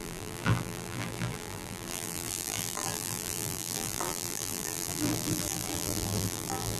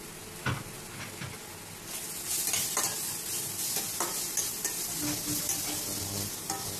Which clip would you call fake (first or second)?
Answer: first